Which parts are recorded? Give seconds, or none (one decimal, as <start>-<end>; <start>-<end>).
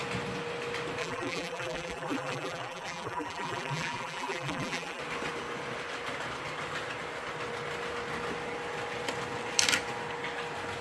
0.0-1.0; 5.0-10.8